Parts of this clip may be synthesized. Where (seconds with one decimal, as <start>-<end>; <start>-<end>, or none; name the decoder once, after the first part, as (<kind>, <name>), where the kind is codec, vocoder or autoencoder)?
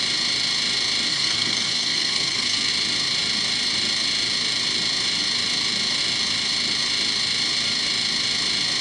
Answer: 1.1-2.7 (codec, SNAC)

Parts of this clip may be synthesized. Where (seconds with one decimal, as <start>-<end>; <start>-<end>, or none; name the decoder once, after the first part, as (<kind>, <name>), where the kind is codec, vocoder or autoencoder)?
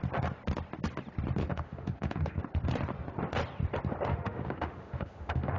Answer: 1.4-2.4 (autoencoder, DAC-VAE); 4.1-5.6